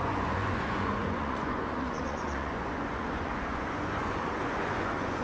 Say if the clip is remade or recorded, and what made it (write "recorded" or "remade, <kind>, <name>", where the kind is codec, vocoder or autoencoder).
remade, vocoder, Vocos